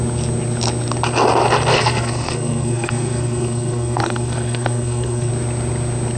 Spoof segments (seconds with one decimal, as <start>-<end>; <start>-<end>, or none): 1.7-5.3